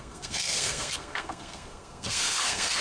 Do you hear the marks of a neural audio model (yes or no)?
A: yes